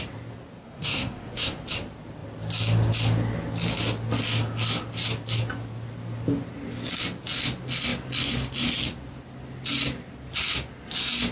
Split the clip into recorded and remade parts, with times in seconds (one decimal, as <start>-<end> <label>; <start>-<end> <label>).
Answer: 0.0-0.6 recorded; 0.6-1.6 remade; 1.6-11.3 recorded